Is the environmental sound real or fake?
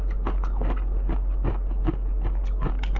real